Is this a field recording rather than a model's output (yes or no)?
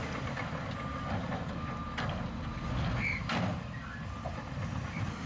yes